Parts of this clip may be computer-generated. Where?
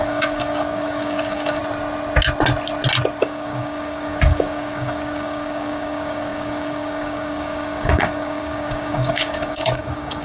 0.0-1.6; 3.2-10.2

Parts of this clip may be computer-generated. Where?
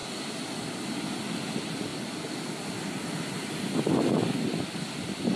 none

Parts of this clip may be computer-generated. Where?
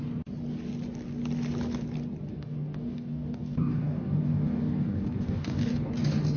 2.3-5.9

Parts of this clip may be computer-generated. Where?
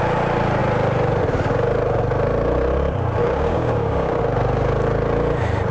3.2-4.2